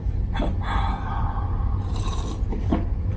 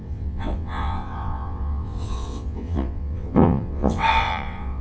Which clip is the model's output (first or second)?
second